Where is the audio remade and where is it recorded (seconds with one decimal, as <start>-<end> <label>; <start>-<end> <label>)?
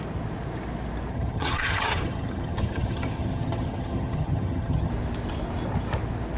0.0-1.1 recorded; 1.1-4.9 remade; 4.9-6.4 recorded